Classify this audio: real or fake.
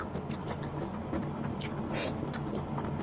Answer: real